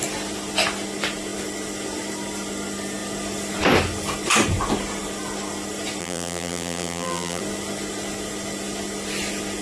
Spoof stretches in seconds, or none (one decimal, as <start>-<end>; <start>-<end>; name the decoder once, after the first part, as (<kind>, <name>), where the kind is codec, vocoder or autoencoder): 6.0-7.4 (vocoder, BigVGAN v2)